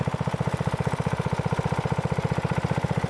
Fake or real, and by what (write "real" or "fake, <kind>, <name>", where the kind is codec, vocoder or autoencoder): fake, vocoder, BigVGAN v2